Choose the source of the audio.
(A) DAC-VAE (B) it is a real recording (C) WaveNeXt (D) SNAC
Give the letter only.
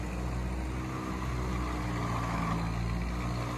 B